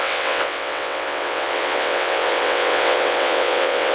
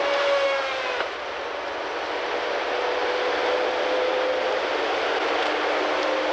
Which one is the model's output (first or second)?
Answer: first